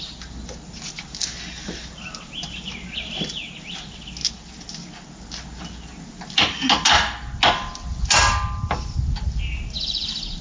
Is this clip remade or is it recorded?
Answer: recorded